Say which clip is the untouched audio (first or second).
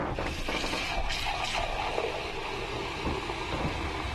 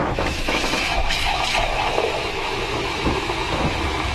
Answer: first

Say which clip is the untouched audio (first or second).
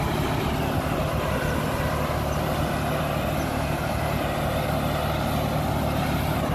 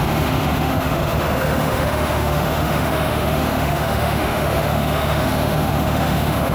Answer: first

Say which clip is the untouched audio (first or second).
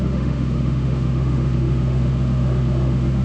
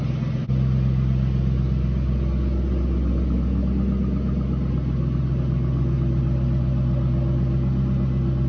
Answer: second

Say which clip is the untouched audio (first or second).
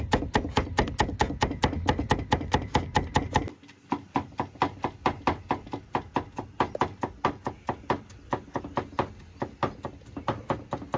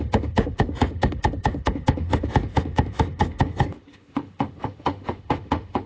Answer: first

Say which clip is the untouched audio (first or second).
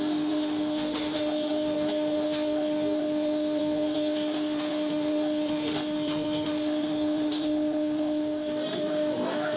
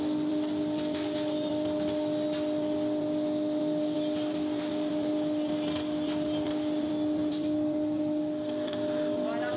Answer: second